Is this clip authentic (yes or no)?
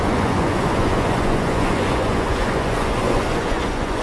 no